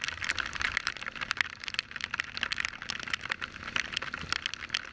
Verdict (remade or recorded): recorded